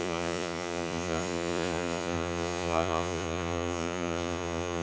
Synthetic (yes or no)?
yes